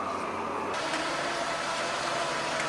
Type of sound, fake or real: real